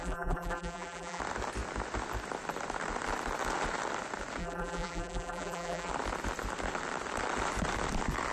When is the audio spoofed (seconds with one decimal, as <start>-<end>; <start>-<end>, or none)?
0.0-1.2; 4.4-5.9